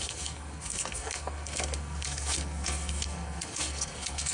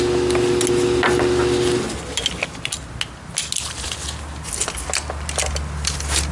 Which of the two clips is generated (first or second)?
first